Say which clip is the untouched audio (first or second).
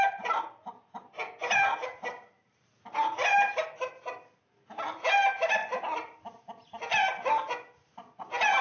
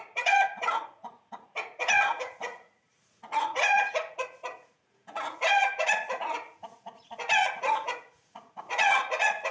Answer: first